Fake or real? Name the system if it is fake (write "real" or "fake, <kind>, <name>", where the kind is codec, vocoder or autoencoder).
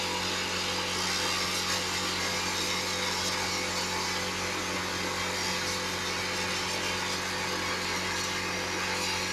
real